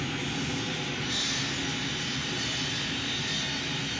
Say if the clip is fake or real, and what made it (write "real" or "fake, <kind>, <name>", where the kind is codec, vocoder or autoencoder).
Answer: real